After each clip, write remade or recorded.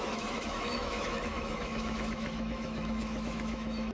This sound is remade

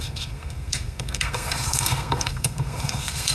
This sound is remade